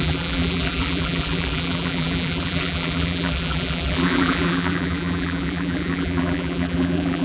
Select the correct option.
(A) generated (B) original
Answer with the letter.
A